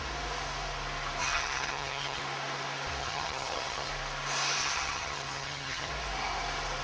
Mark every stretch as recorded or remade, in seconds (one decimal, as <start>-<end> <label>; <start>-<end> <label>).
0.0-1.2 recorded; 1.2-2.2 remade; 2.2-3.0 recorded; 3.0-3.9 remade; 3.9-4.6 recorded; 4.6-5.9 remade; 5.9-6.8 recorded